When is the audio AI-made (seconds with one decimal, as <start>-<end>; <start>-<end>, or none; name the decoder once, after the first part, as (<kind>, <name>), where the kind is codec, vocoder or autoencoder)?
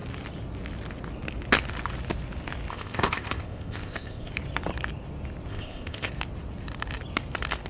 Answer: 2.7-4.3 (codec, ZipCodec); 5.5-6.1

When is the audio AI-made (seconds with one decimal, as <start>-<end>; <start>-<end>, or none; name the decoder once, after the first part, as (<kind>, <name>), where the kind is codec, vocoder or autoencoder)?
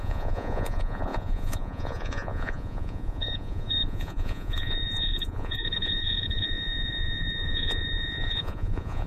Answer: 0.0-9.1 (vocoder, Vocos)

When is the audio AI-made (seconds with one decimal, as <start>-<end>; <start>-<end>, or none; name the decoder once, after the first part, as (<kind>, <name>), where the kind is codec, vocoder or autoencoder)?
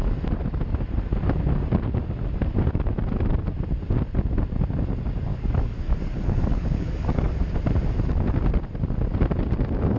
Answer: 5.3-7.3 (codec, DAC)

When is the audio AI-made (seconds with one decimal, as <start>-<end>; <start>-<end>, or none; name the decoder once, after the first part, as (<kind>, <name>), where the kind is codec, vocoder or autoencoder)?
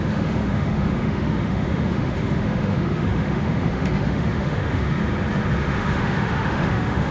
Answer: 0.0-5.0 (autoencoder, DAC-VAE); 5.6-7.1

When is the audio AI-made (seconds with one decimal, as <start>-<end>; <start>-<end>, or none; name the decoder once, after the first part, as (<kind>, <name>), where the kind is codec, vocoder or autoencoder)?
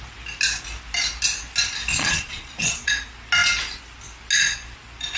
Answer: 1.9-2.9 (vocoder, Vocos)